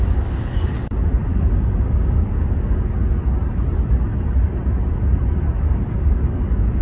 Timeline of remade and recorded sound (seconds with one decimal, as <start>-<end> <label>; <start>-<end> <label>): 0.0-3.0 remade; 3.0-5.6 recorded; 5.6-6.8 remade